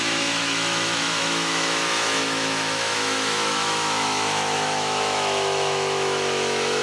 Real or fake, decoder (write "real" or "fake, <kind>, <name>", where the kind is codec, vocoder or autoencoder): fake, autoencoder, DAC-VAE